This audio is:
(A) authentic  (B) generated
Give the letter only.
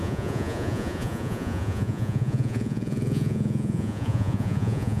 B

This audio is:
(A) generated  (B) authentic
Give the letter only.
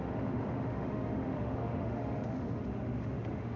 A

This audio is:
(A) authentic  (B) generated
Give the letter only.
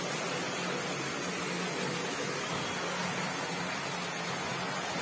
A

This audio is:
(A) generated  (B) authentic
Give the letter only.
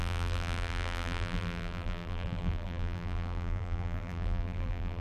A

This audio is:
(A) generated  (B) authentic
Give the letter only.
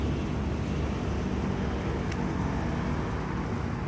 B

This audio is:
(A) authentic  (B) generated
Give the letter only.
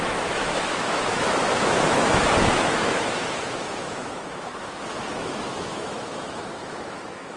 B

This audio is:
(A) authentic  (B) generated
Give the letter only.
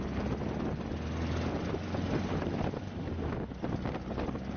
A